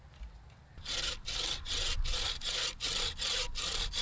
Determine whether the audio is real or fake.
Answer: real